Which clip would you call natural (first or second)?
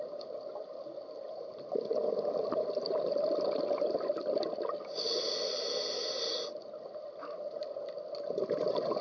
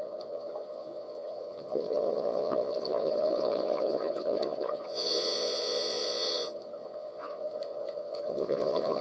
first